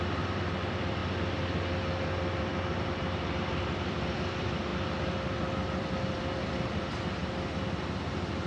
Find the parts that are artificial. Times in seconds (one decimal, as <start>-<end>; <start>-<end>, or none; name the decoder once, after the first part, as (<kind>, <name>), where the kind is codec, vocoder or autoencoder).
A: 0.0-1.0 (vocoder, BigVGAN v2); 2.4-7.2; 8.1-8.5